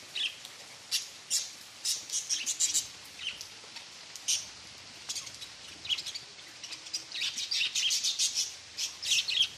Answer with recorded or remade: recorded